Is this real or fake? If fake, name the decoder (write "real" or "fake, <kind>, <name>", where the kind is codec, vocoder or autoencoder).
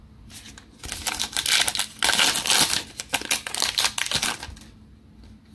real